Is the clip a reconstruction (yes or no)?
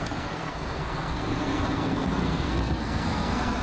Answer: yes